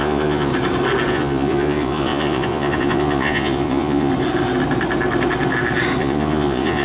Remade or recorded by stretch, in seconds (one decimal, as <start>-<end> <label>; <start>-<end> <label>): 0.0-0.5 remade; 0.5-1.1 recorded; 1.1-4.1 remade; 4.1-6.0 recorded; 6.0-6.8 remade

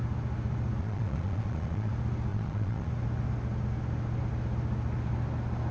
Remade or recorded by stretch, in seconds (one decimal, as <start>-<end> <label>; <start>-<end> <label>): 0.0-0.8 recorded; 0.8-1.9 remade; 1.9-2.3 recorded; 2.3-2.9 remade; 2.9-5.7 recorded

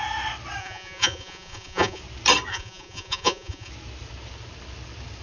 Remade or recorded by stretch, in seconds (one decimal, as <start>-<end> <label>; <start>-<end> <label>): 0.0-0.6 recorded; 0.6-2.0 remade; 2.0-2.5 recorded; 2.5-3.7 remade; 3.7-5.2 recorded

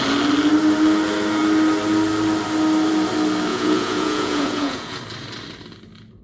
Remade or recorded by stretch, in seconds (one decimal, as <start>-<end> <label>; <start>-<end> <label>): 0.0-3.5 recorded; 3.5-5.0 remade; 5.0-6.2 recorded